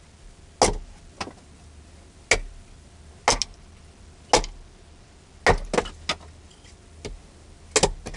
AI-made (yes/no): no